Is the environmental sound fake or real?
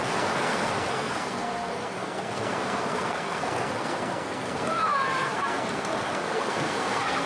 fake